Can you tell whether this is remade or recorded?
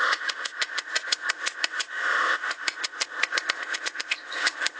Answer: remade